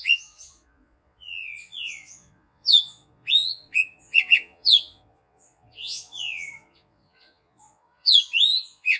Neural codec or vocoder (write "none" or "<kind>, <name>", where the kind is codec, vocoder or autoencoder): vocoder, Vocos